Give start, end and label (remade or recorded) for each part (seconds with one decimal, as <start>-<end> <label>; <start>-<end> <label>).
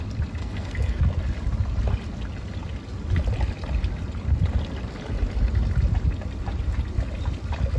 0.0-0.4 recorded; 0.4-1.0 remade; 1.0-7.8 recorded